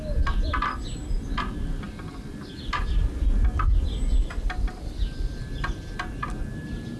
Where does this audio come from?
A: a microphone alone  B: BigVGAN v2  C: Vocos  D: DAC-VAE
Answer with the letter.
A